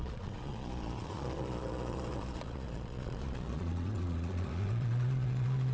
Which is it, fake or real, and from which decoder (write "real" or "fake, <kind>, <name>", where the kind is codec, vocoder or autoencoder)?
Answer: fake, vocoder, Vocos